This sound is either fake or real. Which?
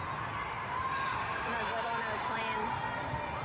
real